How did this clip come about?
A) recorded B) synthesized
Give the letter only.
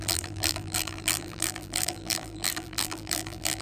B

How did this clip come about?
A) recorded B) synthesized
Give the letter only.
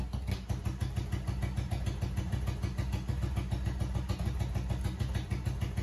A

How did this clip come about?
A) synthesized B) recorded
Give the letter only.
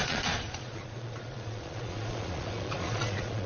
A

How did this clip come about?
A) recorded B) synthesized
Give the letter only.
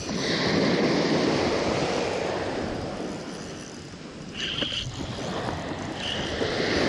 A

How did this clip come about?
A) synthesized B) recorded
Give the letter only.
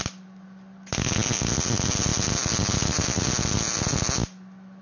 B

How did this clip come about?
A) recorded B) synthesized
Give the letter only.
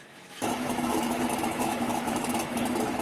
B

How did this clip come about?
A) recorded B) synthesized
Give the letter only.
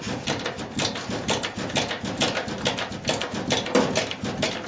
A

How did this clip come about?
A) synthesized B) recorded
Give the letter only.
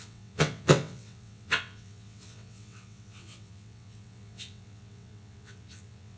A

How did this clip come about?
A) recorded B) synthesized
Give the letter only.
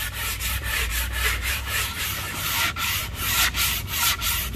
B